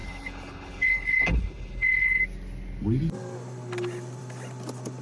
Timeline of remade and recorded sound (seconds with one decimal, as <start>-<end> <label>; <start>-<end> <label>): 0.0-2.2 remade; 2.2-5.0 recorded